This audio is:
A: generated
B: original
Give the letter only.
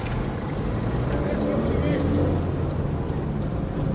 B